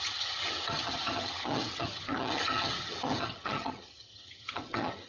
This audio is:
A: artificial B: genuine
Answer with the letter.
A